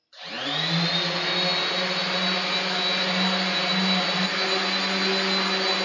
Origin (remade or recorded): recorded